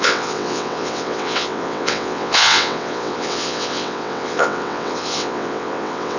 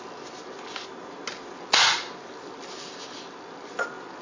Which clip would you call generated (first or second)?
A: first